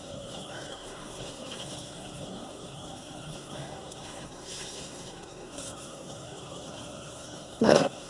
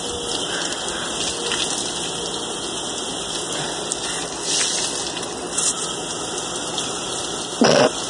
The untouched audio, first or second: second